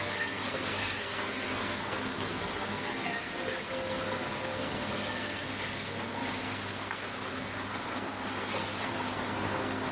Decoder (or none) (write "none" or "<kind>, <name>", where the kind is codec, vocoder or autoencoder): codec, SNAC